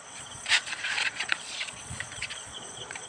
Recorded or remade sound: remade